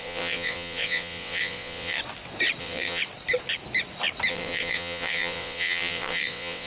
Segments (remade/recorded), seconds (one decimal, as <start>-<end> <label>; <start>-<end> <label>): 0.0-2.0 remade; 2.0-2.6 recorded; 2.6-3.0 remade; 3.0-4.3 recorded; 4.3-6.7 remade